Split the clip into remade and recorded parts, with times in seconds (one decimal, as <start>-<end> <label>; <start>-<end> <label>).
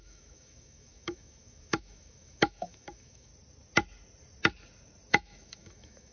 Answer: 0.0-3.3 remade; 3.3-5.1 recorded; 5.1-6.1 remade